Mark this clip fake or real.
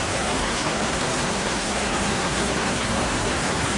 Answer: fake